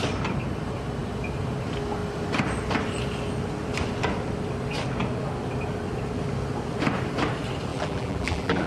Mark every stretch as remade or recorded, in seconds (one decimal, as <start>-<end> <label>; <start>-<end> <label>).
0.0-7.7 recorded; 7.7-8.7 remade